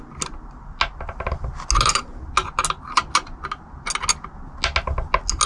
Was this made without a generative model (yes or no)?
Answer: yes